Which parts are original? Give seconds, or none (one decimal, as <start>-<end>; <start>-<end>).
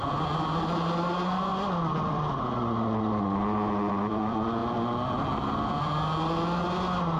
0.0-7.2